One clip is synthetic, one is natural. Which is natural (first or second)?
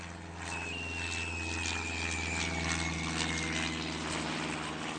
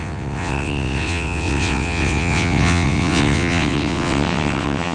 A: first